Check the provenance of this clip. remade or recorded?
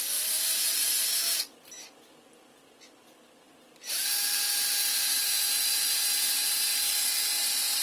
recorded